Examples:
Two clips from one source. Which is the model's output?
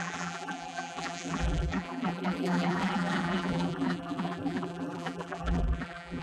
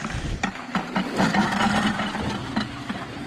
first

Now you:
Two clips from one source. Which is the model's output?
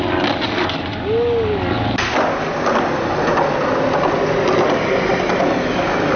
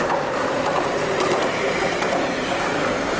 second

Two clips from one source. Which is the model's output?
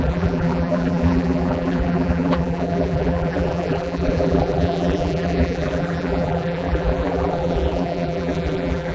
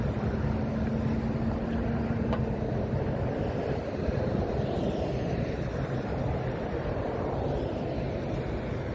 first